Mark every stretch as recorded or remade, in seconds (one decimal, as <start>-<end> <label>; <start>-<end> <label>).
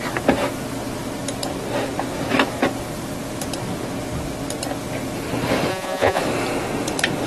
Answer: 0.0-5.7 recorded; 5.7-6.2 remade; 6.2-7.3 recorded